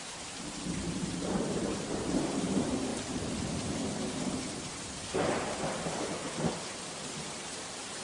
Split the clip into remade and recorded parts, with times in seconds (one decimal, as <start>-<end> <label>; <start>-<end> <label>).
0.0-2.9 remade; 2.9-6.9 recorded; 6.9-8.0 remade